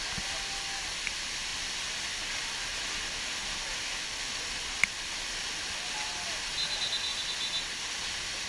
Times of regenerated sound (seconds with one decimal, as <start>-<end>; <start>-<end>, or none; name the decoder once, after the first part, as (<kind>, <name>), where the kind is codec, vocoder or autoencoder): none